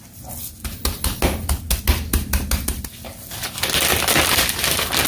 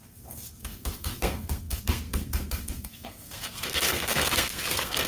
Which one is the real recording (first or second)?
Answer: first